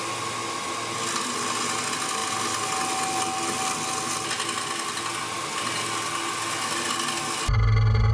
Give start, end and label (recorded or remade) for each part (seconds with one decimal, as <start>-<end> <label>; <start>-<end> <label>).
0.0-8.1 recorded